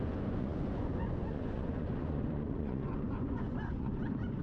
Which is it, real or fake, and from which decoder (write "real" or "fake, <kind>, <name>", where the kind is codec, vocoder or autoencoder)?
fake, vocoder, Vocos